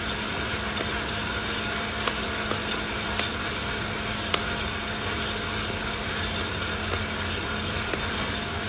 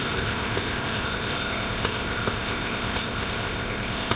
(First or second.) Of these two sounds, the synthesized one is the second